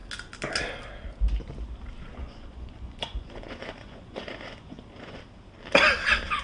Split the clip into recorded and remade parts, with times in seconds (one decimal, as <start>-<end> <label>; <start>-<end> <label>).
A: 0.0-2.2 recorded; 2.2-5.2 remade; 5.2-6.4 recorded